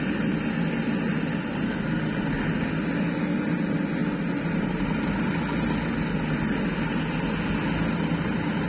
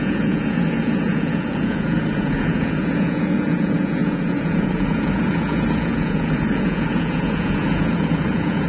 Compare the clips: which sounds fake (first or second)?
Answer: second